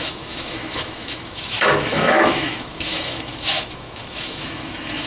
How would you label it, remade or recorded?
remade